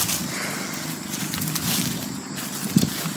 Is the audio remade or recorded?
recorded